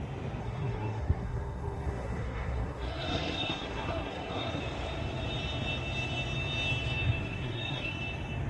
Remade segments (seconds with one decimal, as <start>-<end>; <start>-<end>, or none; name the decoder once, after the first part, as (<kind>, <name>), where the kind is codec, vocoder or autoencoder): 0.4-4.6 (codec, SNAC); 7.2-8.0